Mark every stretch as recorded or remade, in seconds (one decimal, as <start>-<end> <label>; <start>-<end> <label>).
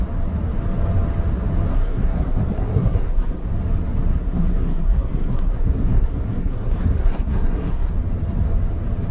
0.0-1.7 recorded; 1.7-3.5 remade; 3.5-4.1 recorded; 4.1-7.9 remade; 7.9-9.1 recorded